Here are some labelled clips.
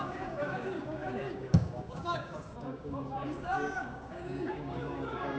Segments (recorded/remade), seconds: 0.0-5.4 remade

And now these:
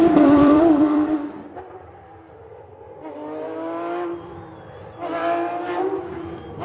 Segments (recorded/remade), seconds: 0.0-2.5 remade; 2.5-6.0 recorded; 6.0-6.6 remade

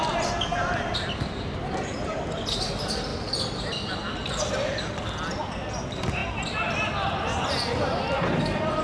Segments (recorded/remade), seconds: 0.0-8.8 recorded

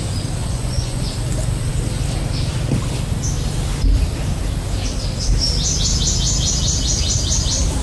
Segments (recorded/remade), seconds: 0.0-0.4 recorded; 0.4-1.1 remade; 1.1-7.8 recorded

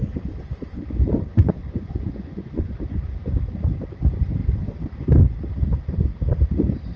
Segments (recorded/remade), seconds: 0.0-1.3 recorded; 1.3-2.7 remade; 2.7-7.0 recorded

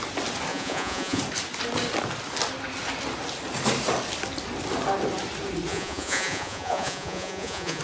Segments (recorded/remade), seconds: 0.0-0.5 recorded; 0.5-1.2 remade; 1.2-5.7 recorded; 5.7-7.8 remade

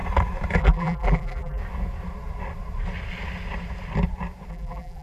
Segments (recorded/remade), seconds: 0.0-0.6 recorded; 0.6-1.6 remade; 1.6-4.5 recorded; 4.5-5.0 remade

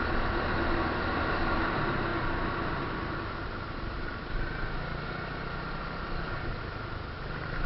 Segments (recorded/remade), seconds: 0.0-7.7 recorded